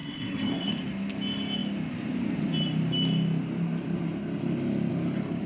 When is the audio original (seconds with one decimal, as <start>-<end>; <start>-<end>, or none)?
0.7-5.5